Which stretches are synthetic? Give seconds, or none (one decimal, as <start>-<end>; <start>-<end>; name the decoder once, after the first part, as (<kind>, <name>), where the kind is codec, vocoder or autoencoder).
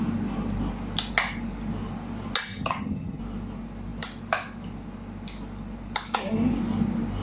2.5-3.2 (vocoder, HiFi-GAN)